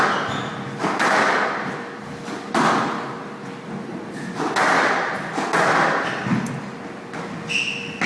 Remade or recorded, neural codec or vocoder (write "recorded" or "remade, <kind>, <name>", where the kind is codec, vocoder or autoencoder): recorded